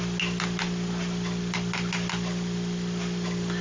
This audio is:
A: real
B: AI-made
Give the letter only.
A